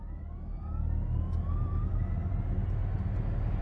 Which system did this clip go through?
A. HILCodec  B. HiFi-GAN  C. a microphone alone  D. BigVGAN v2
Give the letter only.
C